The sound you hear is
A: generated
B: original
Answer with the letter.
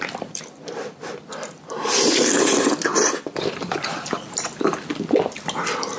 A